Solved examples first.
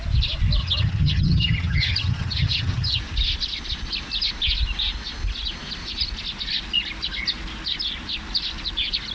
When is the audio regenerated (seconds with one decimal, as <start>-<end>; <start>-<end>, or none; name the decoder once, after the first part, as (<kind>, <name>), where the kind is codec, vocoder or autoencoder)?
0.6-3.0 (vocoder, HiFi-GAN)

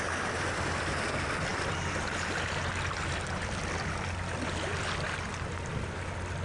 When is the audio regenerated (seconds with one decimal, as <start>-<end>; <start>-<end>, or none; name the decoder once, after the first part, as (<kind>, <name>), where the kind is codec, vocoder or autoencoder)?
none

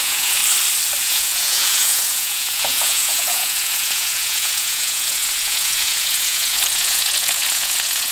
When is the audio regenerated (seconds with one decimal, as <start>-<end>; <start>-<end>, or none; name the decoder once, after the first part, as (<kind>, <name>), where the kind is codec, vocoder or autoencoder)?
0.0-0.4 (vocoder, Vocos); 1.0-8.1

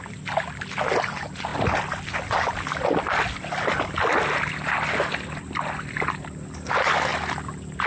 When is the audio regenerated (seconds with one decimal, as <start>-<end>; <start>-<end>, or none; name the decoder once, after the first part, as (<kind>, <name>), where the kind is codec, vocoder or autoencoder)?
none

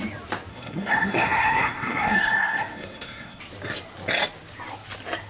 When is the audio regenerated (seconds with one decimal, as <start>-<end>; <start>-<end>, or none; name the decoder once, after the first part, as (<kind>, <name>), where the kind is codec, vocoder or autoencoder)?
0.5-3.4 (codec, SNAC)